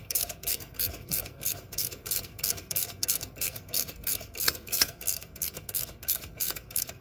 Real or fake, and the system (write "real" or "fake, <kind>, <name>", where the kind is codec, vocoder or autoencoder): fake, codec, SNAC